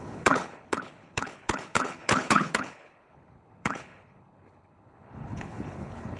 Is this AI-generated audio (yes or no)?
yes